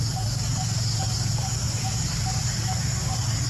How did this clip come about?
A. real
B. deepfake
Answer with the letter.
B